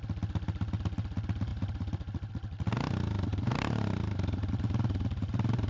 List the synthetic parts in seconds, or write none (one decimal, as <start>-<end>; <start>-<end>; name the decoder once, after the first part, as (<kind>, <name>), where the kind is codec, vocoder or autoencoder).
1.5-2.3 (vocoder, BigVGAN v2); 3.3-5.7